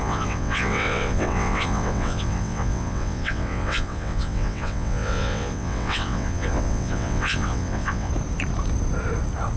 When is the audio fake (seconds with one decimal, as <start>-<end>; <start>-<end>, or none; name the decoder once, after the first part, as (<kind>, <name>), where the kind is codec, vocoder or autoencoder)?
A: 0.0-8.1 (vocoder, WaveNeXt)